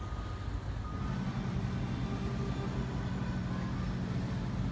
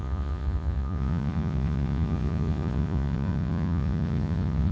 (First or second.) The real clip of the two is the first